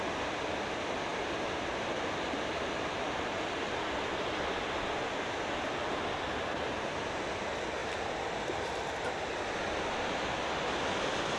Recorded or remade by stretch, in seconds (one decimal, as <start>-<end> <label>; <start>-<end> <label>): 0.0-11.4 recorded